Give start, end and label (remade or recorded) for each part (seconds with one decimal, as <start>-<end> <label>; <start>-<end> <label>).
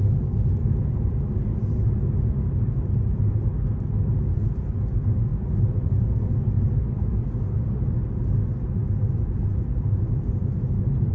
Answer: 0.0-11.1 recorded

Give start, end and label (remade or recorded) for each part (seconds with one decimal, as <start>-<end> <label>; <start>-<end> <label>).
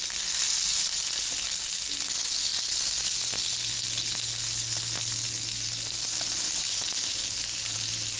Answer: 0.0-8.2 recorded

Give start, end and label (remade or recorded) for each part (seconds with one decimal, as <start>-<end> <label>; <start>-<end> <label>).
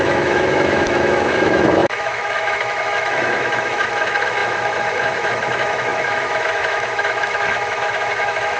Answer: 0.0-8.6 remade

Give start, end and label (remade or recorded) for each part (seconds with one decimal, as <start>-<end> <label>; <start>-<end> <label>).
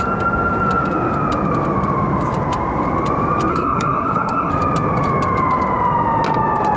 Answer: 0.0-3.5 recorded; 3.5-4.5 remade; 4.5-6.8 recorded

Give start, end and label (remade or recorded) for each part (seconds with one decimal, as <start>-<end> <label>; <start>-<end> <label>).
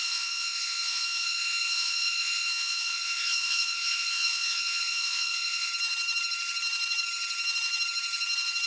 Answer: 0.0-5.7 remade; 5.7-8.7 recorded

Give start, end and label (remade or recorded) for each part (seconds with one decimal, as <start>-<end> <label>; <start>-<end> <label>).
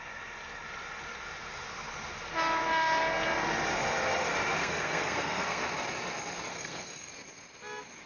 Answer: 0.0-4.6 recorded; 4.6-5.6 remade; 5.6-6.5 recorded; 6.5-7.1 remade; 7.1-8.1 recorded